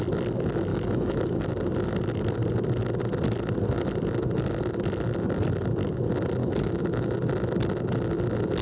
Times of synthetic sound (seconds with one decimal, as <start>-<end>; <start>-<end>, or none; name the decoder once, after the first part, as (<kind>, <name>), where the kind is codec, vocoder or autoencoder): 0.7-1.4 (autoencoder, DAC-VAE); 6.4-7.1